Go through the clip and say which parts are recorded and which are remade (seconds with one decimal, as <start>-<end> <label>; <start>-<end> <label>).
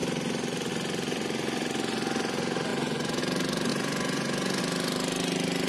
0.0-2.7 recorded; 2.7-3.2 remade; 3.2-3.7 recorded; 3.7-4.6 remade; 4.6-5.7 recorded